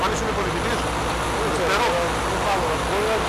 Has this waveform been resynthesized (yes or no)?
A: no